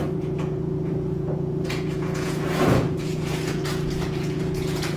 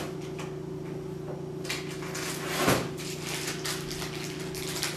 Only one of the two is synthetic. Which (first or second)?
first